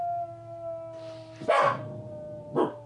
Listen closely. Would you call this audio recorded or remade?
recorded